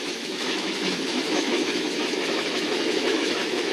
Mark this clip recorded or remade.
remade